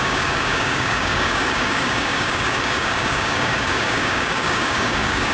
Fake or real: fake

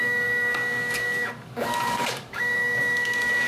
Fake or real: fake